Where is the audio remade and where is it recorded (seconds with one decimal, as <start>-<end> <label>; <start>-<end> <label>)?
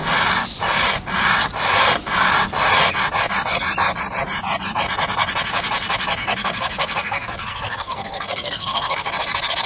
0.0-6.2 recorded; 6.2-9.1 remade; 9.1-9.7 recorded